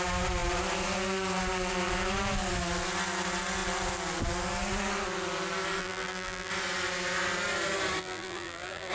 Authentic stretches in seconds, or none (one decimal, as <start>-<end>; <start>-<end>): 0.0-5.8; 6.5-8.0